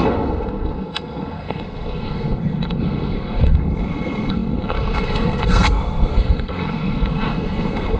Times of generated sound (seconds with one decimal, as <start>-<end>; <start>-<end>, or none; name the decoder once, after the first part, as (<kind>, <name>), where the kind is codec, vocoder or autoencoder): 0.0-8.0 (codec, SNAC)